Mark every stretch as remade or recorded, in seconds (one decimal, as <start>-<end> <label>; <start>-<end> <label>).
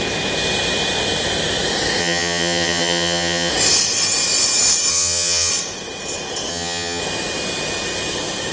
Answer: 0.0-2.0 recorded; 2.0-3.5 remade; 3.5-4.9 recorded; 4.9-5.5 remade; 5.5-6.5 recorded; 6.5-7.0 remade; 7.0-8.5 recorded